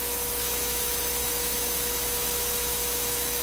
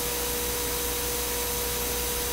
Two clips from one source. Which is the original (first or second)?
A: second